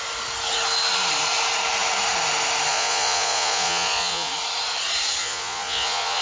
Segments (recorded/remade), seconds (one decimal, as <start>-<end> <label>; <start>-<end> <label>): 0.0-2.7 recorded; 2.7-4.3 remade; 4.3-5.2 recorded; 5.2-6.2 remade